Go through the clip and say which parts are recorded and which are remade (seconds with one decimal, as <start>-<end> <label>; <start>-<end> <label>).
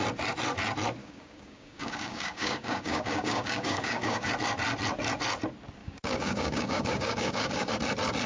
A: 0.0-1.0 recorded; 1.0-4.3 remade; 4.3-5.8 recorded; 5.8-7.7 remade; 7.7-8.3 recorded